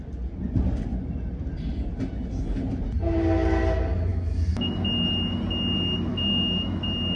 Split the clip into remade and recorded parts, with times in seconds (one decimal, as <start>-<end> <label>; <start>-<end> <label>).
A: 0.0-4.1 recorded; 4.1-4.7 remade; 4.7-6.1 recorded; 6.1-6.8 remade; 6.8-7.2 recorded